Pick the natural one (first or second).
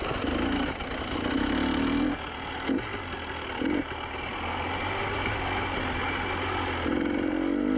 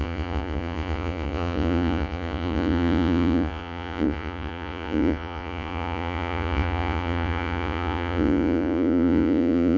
first